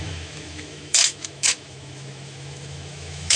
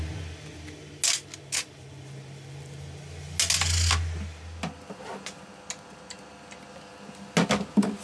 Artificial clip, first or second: first